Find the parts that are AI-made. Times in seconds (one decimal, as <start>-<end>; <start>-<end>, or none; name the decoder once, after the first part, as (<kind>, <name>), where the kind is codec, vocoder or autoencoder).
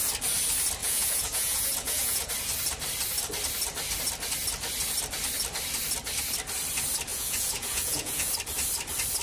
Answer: 0.8-2.3 (vocoder, Vocos); 7.1-8.3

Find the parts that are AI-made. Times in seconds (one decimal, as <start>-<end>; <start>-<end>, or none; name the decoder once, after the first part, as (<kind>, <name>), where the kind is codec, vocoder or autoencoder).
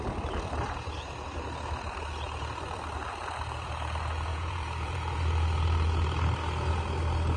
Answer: 4.3-5.2 (vocoder, Vocos)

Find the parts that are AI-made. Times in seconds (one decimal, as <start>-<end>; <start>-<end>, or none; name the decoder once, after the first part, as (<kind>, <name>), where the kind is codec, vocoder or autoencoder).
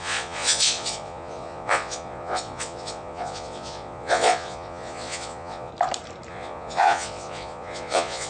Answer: 0.0-5.7 (vocoder, Vocos); 6.3-8.3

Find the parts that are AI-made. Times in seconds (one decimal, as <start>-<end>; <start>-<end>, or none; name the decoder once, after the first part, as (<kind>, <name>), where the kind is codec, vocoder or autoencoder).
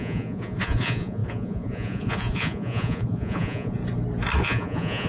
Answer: 0.0-3.8 (vocoder, Vocos); 4.4-5.1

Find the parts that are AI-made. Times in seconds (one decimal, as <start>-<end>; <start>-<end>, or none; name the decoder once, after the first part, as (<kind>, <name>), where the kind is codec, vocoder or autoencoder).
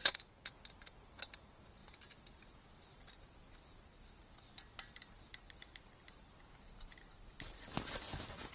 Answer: none